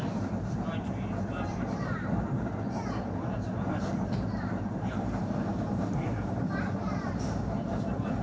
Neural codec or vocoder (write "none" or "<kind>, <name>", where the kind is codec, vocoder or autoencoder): vocoder, BigVGAN v2